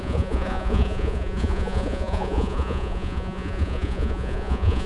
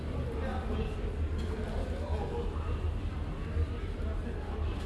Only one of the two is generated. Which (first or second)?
first